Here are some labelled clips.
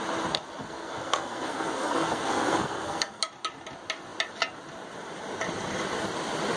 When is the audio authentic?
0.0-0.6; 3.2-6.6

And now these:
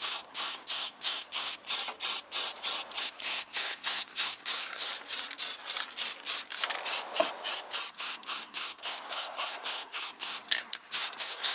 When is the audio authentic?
1.6-3.0; 4.9-7.9

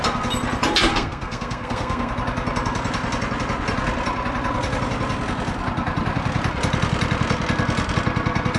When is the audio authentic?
0.0-0.9; 2.1-8.6

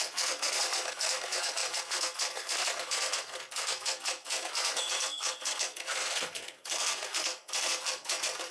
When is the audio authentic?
none

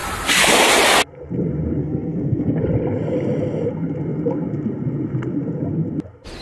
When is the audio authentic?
0.0-1.8; 2.6-6.4

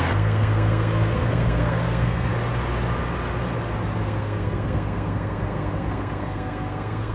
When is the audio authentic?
2.3-4.0

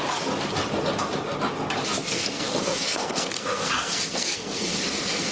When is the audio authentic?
0.0-2.0

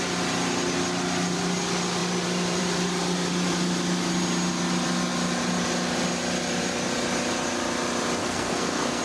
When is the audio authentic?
0.0-8.2